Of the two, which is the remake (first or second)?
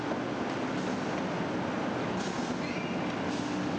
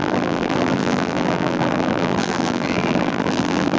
second